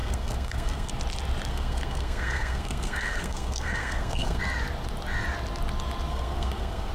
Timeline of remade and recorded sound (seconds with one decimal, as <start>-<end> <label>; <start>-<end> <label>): 0.0-0.9 remade; 0.9-1.5 recorded; 1.5-4.4 remade; 4.4-6.1 recorded; 6.1-6.9 remade